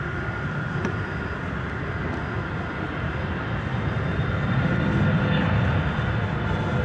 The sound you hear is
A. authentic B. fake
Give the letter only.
A